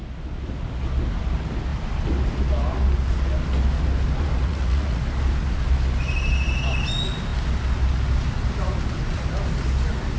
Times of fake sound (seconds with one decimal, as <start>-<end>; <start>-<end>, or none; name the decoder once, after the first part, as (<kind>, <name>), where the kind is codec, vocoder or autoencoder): 4.4-5.0 (vocoder, Vocos)